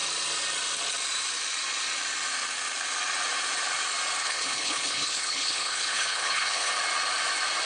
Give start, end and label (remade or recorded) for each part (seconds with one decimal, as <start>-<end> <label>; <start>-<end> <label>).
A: 0.0-4.2 recorded; 4.2-6.7 remade; 6.7-7.7 recorded